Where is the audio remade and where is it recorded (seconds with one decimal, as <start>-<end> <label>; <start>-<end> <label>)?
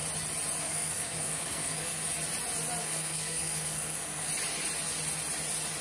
0.0-0.6 recorded; 0.6-1.9 remade; 1.9-2.8 recorded; 2.8-4.3 remade; 4.3-5.8 recorded